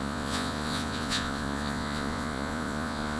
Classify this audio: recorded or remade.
remade